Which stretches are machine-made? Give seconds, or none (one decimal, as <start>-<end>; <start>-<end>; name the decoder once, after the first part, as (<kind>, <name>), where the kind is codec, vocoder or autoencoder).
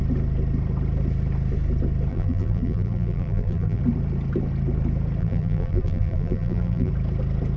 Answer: 2.1-3.8 (vocoder, BigVGAN v2); 5.2-6.9